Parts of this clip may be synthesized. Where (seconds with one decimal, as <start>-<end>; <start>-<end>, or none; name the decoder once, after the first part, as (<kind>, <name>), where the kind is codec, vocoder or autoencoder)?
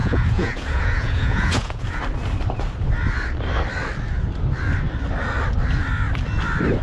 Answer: 0.0-2.0 (vocoder, Vocos)